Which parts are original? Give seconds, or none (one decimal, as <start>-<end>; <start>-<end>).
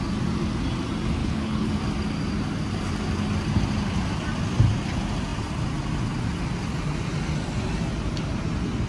0.0-1.2; 1.7-8.9